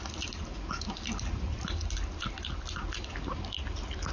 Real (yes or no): yes